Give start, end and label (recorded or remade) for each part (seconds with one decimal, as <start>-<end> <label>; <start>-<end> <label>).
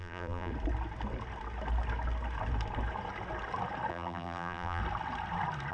0.0-0.5 remade; 0.5-3.9 recorded; 3.9-4.8 remade; 4.8-5.7 recorded